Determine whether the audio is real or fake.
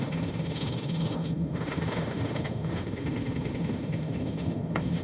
fake